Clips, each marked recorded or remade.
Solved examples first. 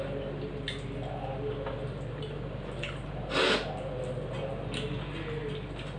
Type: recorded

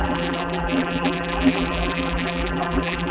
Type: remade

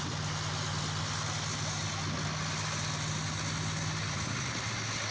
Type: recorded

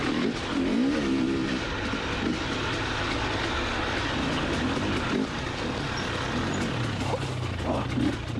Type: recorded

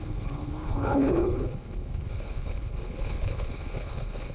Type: remade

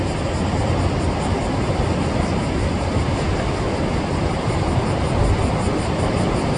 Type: recorded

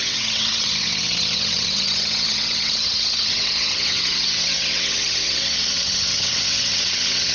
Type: remade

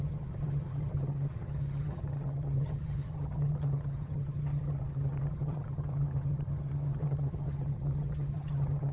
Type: remade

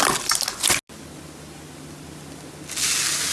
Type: recorded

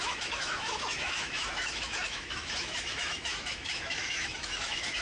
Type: remade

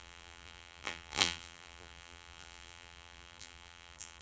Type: remade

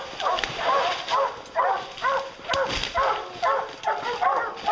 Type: recorded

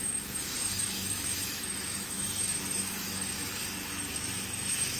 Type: remade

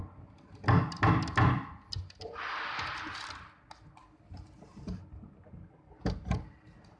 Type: recorded